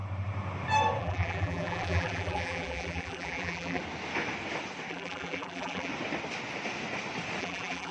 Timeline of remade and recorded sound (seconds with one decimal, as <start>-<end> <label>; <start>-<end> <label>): 0.0-1.0 recorded; 1.0-3.8 remade; 3.8-4.9 recorded; 4.9-5.9 remade; 5.9-7.4 recorded; 7.4-7.9 remade